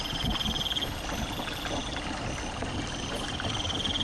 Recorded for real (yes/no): yes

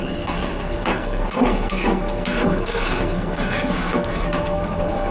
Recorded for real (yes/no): no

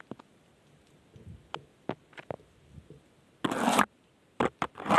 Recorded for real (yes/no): yes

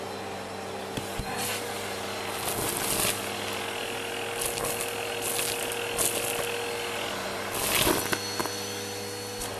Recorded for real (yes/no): yes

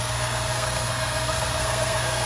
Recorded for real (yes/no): no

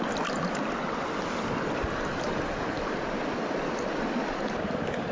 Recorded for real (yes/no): yes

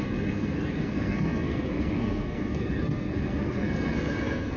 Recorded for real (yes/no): no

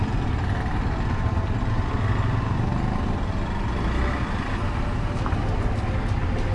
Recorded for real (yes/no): yes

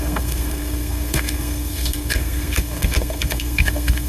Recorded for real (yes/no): no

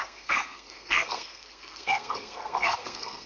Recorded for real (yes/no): no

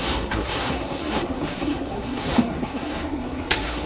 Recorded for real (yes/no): no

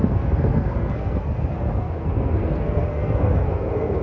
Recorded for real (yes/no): no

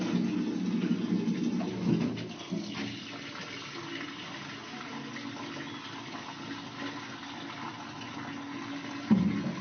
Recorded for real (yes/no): yes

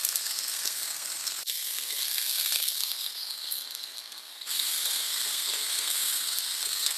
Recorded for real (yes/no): no